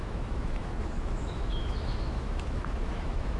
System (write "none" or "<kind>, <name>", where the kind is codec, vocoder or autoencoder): autoencoder, DAC-VAE